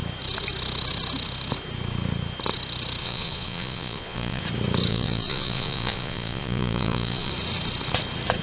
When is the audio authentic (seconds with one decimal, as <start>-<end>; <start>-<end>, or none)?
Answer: 0.0-3.0; 4.4-4.9; 7.3-8.4